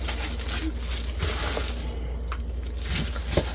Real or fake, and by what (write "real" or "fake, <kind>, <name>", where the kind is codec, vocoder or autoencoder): real